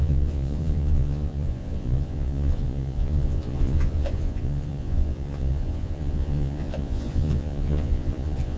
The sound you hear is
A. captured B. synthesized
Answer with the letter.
B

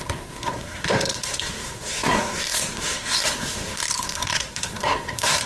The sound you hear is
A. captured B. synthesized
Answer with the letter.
B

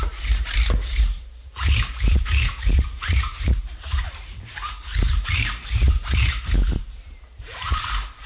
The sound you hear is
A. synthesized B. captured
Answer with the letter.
A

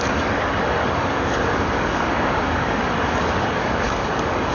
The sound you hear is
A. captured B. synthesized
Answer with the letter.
B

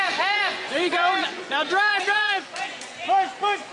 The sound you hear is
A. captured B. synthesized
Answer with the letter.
B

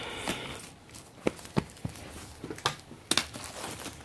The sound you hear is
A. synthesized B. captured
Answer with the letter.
B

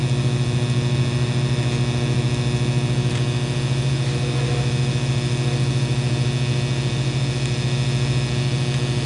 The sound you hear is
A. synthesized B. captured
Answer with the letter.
B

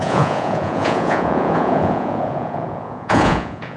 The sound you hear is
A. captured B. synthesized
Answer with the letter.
B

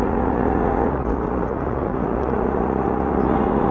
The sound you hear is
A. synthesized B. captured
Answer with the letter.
A